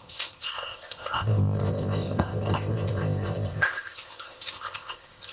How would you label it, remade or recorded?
remade